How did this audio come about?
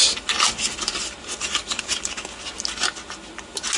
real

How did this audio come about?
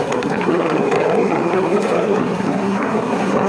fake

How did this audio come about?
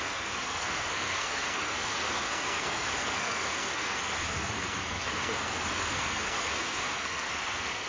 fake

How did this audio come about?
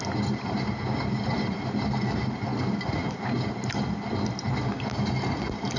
real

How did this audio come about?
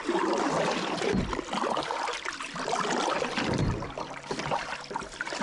real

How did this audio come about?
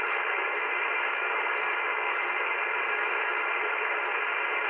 real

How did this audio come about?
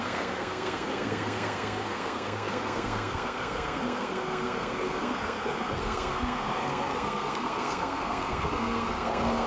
fake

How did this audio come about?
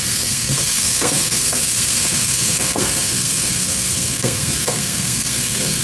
fake